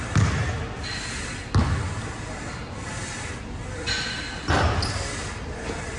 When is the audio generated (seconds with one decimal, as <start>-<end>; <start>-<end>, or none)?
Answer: none